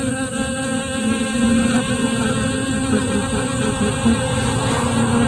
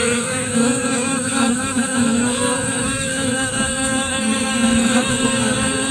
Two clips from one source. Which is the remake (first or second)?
second